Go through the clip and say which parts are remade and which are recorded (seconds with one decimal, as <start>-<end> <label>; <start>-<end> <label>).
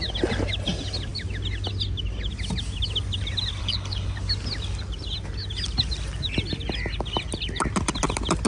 0.0-3.6 recorded; 3.6-4.2 remade; 4.2-8.5 recorded